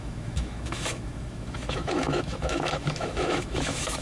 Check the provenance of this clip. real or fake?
fake